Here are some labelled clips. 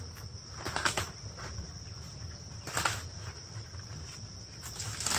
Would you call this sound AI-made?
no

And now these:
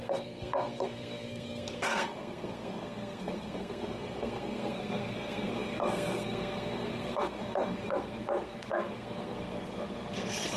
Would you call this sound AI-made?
yes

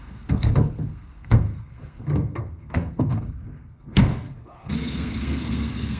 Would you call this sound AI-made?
yes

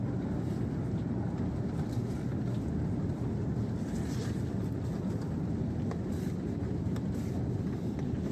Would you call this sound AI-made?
no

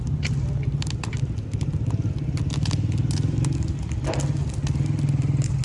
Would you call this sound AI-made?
no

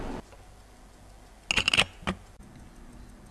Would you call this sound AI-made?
no